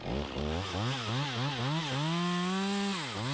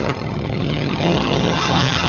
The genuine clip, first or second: first